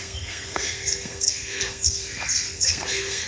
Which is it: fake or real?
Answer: fake